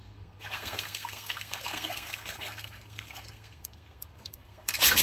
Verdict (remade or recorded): remade